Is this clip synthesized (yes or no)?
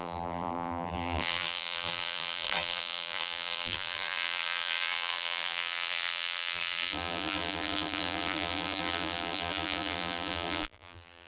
yes